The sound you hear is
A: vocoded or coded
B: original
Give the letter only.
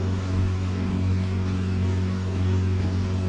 A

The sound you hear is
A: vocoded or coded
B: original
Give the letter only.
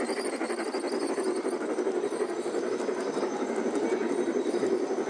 B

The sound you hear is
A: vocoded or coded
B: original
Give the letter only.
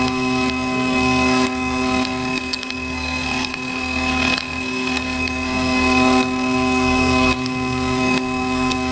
A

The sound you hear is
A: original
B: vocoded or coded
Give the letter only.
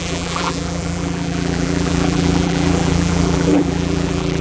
B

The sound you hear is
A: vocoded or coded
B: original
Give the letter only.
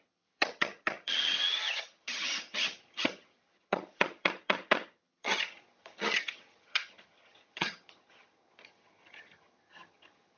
A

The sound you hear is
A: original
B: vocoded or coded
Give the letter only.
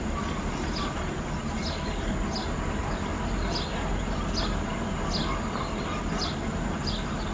A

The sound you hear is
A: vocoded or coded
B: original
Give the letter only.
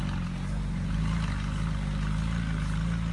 B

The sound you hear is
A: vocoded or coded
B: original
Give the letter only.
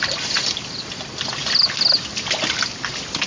B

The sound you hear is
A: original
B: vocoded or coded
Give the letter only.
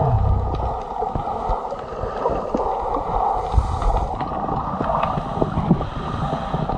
A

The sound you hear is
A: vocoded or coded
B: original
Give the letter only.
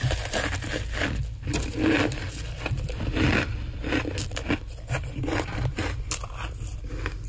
B